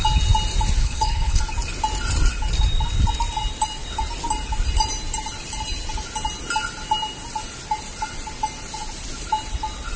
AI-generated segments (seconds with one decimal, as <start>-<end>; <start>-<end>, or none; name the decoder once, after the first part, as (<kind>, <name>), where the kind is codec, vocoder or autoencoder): 0.8-1.4 (codec, HILCodec)